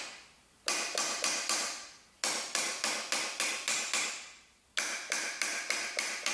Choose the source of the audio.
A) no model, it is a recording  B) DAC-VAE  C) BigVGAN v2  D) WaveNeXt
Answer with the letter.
A